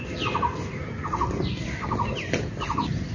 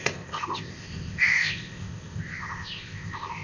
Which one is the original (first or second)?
first